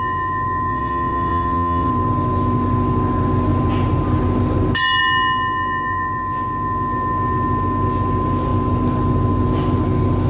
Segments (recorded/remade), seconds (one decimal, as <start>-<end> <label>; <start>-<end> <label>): 0.0-0.7 recorded; 0.7-1.9 remade; 1.9-10.3 recorded